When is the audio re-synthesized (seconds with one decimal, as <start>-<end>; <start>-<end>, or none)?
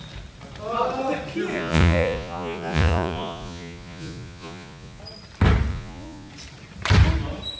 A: 1.5-5.0; 5.7-6.3